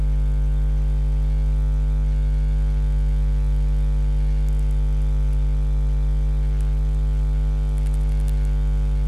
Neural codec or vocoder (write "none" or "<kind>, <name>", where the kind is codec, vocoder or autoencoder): none